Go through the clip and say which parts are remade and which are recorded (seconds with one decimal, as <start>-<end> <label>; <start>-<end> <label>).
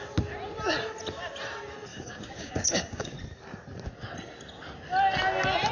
0.0-1.9 recorded; 1.9-3.2 remade; 3.2-5.7 recorded